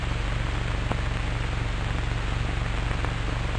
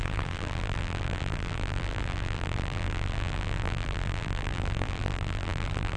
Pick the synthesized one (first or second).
second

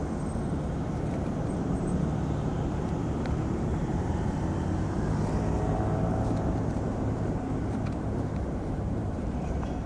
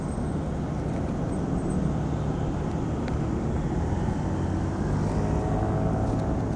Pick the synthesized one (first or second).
first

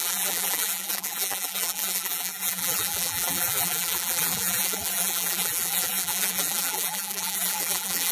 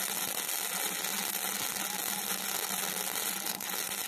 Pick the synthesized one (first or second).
first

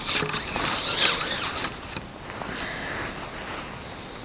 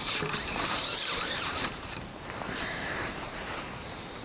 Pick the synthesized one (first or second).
second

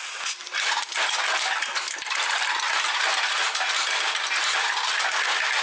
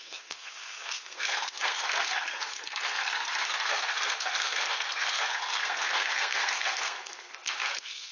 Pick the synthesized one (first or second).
second